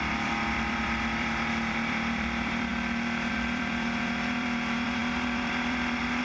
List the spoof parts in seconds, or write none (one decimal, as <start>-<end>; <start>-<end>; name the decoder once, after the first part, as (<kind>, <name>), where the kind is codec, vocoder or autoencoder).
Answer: 0.0-2.7 (vocoder, BigVGAN v2); 3.3-6.2